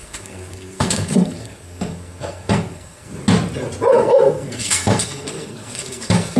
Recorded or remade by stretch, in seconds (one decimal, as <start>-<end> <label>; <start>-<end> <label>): 0.0-3.1 remade; 3.1-3.9 recorded; 3.9-6.4 remade